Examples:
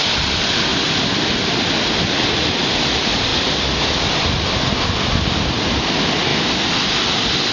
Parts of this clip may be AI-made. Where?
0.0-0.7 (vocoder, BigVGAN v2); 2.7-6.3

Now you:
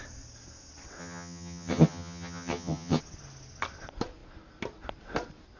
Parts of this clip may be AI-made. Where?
1.0-3.0 (vocoder, HiFi-GAN)